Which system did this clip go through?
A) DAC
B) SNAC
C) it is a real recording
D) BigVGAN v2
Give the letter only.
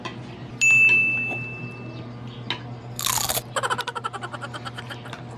C